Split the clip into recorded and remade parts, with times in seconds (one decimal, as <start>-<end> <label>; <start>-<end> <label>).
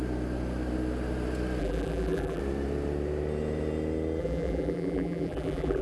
0.0-1.6 recorded; 1.6-2.4 remade; 2.4-4.2 recorded; 4.2-5.8 remade